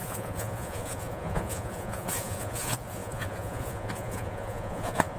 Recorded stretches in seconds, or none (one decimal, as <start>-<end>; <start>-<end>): none